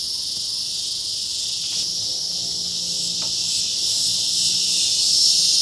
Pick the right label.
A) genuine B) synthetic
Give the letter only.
A